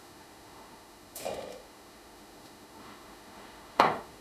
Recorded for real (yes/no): no